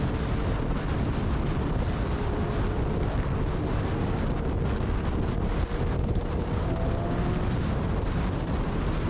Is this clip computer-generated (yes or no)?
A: no